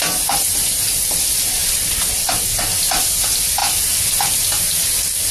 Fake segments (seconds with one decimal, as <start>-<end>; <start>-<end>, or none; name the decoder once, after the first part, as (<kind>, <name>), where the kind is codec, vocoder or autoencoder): none